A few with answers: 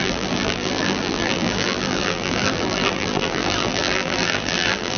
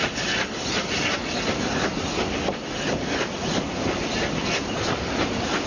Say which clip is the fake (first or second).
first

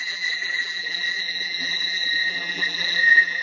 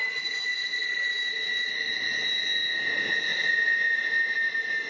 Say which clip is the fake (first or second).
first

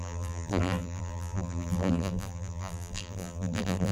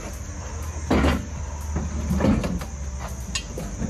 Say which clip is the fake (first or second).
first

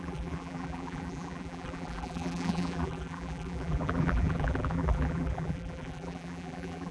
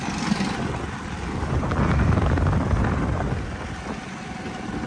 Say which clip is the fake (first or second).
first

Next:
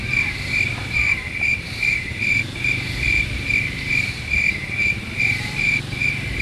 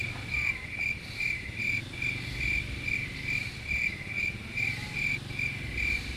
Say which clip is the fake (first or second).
first